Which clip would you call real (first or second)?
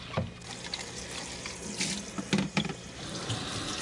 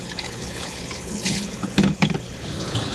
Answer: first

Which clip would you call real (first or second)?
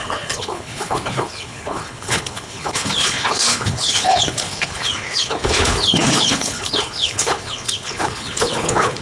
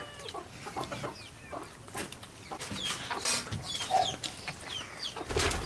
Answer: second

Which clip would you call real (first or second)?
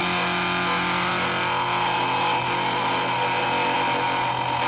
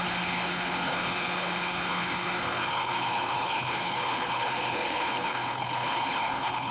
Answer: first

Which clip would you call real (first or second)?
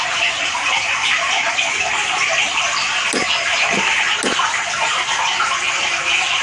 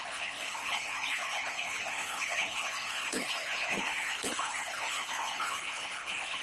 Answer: first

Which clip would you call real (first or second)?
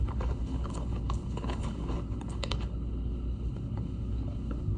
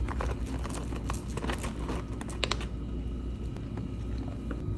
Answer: second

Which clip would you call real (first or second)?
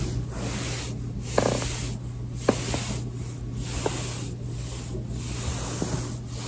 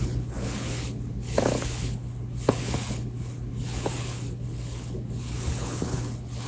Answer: first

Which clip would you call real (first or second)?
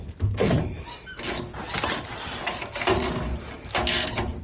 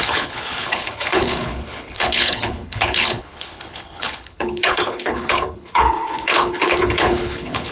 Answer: first